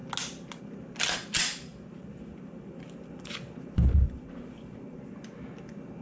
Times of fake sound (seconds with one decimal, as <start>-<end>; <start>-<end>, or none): 1.7-5.3